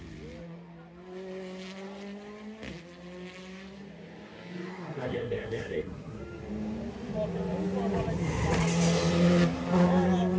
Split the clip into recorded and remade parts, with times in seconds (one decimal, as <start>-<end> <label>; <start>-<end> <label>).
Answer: 0.0-4.7 recorded; 4.7-6.2 remade; 6.2-10.4 recorded